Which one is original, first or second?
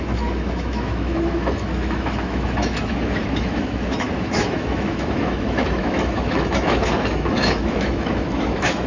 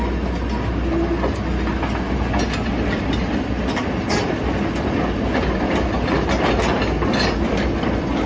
second